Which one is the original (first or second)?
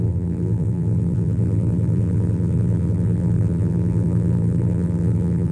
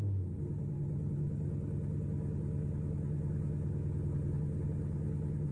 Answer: second